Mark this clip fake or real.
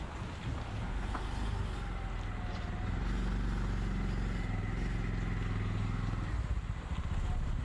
real